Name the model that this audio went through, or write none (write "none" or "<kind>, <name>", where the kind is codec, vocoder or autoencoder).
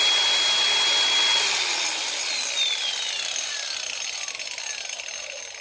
none